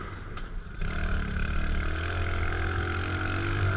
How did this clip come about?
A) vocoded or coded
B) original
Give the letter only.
B